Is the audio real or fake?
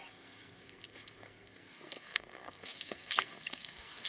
fake